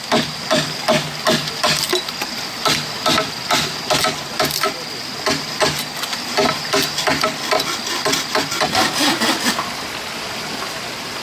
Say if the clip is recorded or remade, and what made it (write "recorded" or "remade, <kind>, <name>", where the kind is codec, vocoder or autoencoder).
recorded